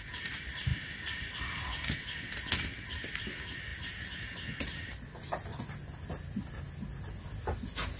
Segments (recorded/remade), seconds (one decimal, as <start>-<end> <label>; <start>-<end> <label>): 0.0-8.0 recorded

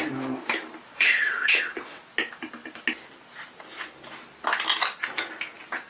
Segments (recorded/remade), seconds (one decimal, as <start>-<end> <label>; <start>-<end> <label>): 0.0-0.9 recorded; 0.9-2.0 remade; 2.0-5.9 recorded